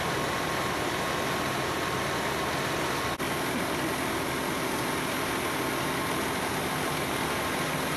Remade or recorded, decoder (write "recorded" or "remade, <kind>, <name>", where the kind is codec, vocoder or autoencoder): recorded